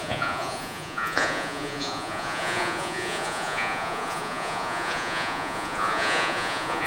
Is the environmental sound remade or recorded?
remade